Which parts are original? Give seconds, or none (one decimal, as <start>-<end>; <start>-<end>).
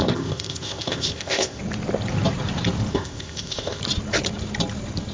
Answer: 1.6-2.9; 3.8-5.1